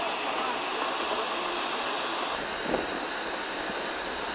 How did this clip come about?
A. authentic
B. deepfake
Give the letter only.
A